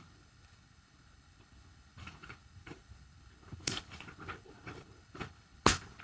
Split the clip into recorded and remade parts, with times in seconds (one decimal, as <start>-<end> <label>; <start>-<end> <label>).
0.0-6.0 remade